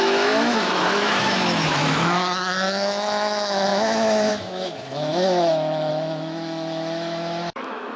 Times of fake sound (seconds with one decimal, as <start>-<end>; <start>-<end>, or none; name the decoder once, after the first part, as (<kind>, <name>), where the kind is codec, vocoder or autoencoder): 0.0-8.0 (autoencoder, DAC-VAE)